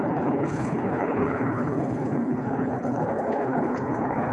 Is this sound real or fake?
fake